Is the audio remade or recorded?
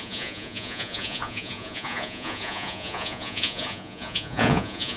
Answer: remade